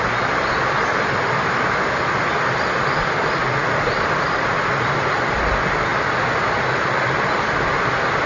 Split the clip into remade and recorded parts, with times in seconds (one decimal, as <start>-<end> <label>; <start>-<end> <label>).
0.0-8.3 recorded